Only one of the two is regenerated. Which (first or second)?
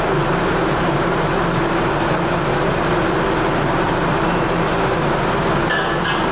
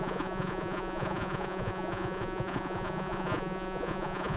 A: second